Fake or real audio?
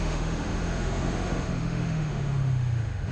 fake